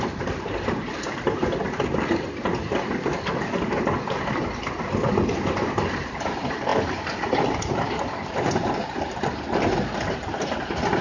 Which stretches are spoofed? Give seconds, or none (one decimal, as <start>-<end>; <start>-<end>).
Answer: none